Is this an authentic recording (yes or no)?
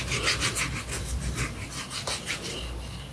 yes